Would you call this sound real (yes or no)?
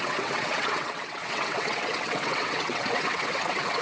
no